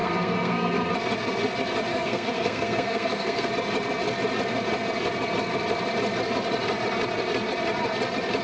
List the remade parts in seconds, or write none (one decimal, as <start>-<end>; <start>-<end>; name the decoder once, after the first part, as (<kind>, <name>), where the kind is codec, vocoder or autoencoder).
0.0-0.9 (codec, SNAC); 1.9-3.5